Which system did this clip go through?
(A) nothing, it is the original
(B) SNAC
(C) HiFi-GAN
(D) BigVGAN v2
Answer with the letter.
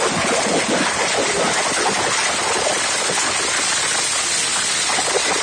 A